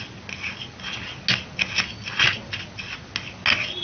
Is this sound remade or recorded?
recorded